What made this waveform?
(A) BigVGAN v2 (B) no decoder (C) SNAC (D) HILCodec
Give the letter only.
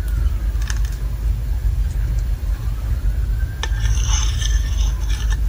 B